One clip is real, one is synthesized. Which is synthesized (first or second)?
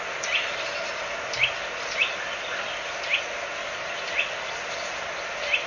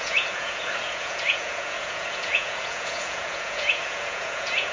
second